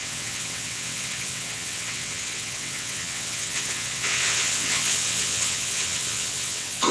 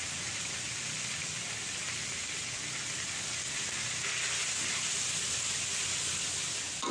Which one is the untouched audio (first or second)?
second